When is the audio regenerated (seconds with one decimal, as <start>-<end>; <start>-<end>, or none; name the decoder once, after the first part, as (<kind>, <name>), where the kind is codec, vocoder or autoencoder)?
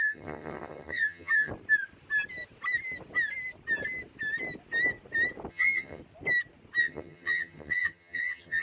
0.0-1.5 (vocoder, HiFi-GAN); 5.5-6.0; 6.8-8.6